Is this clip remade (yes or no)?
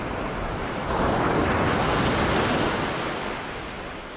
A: no